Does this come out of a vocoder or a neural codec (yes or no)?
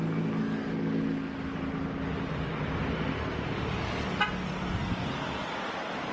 no